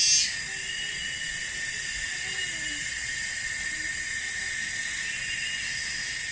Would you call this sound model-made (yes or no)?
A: no